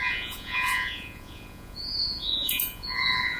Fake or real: fake